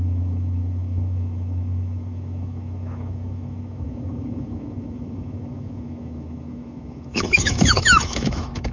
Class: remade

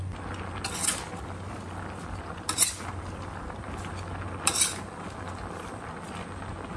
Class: recorded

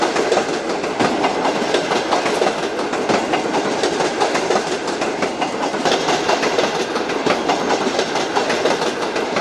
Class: recorded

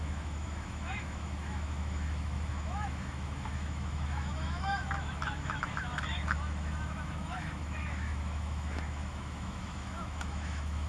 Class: remade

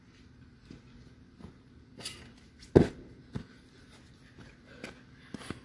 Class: recorded